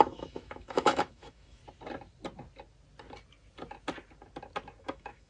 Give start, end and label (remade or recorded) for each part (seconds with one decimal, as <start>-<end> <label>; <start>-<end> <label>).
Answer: 0.0-1.6 remade; 1.6-4.8 recorded; 4.8-5.3 remade